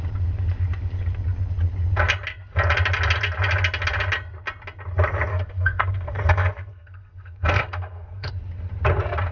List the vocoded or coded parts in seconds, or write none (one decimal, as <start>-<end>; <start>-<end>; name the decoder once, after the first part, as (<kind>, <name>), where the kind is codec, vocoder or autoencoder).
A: 5.3-8.3 (codec, SNAC)